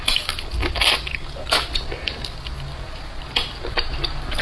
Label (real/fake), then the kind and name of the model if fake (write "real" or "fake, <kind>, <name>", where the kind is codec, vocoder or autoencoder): real